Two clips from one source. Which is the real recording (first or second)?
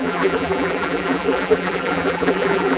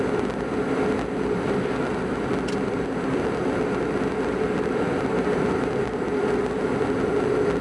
second